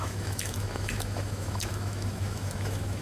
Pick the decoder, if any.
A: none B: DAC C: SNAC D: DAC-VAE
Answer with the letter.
D